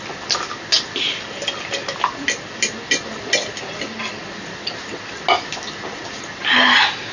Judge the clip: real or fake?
real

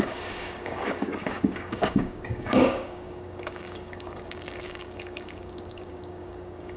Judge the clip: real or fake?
fake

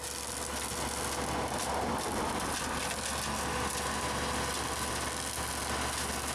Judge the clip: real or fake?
real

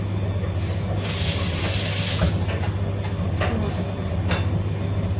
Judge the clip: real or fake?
real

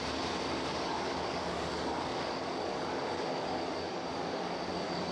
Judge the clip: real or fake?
fake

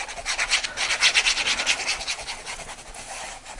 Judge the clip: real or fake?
real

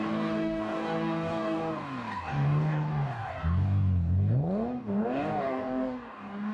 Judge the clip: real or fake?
fake